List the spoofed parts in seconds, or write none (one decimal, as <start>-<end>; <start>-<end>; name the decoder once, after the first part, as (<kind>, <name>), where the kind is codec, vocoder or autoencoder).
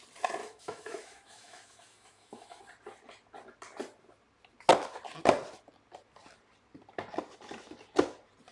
0.4-2.6 (autoencoder, DAC-VAE)